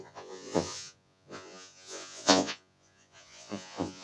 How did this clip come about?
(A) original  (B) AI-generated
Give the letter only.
B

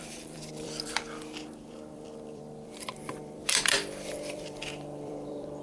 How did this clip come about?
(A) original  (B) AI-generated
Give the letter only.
B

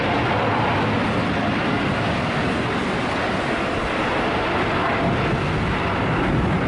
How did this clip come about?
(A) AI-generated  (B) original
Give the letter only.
B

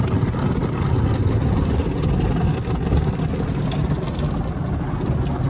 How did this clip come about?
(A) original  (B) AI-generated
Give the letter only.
A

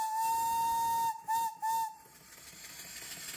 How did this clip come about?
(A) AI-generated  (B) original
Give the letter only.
B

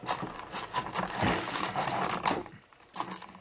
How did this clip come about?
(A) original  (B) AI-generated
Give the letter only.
A